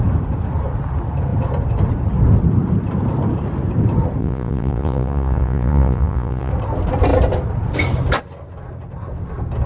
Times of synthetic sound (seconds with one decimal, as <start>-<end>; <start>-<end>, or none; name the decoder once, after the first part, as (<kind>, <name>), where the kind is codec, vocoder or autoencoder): 4.2-6.5 (vocoder, Vocos)